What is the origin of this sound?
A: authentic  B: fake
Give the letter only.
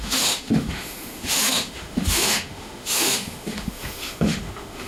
B